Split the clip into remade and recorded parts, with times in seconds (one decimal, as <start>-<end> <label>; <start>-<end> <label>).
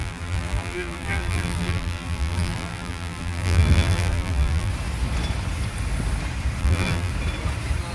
0.0-4.7 remade; 4.7-6.6 recorded; 6.6-7.1 remade; 7.1-7.9 recorded